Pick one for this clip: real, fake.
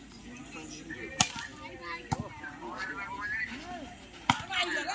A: real